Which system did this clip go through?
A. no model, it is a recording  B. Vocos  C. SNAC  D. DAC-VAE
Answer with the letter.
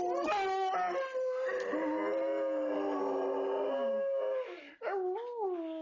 A